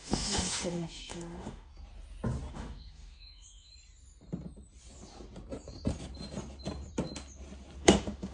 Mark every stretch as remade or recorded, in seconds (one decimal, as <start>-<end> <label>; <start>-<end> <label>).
0.0-1.7 remade; 1.7-2.5 recorded; 2.5-3.7 remade; 3.7-7.8 recorded; 7.8-8.3 remade